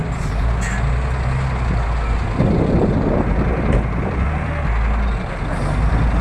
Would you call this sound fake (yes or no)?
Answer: no